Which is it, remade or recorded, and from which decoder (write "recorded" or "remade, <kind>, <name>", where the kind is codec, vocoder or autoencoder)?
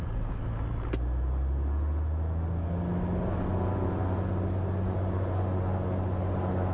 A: recorded